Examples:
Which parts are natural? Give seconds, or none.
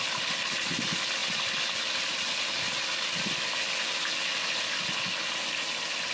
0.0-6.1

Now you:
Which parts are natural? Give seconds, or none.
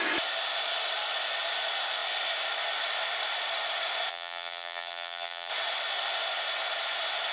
0.0-4.1; 5.5-7.3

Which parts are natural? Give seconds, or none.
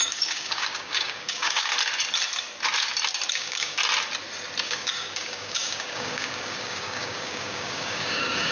1.7-3.3; 3.8-4.6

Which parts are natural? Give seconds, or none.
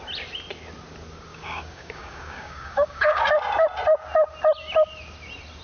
0.0-1.3; 3.2-5.6